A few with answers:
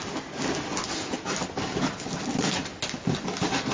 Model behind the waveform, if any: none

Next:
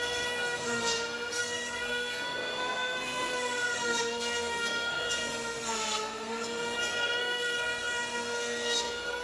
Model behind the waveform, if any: codec, SNAC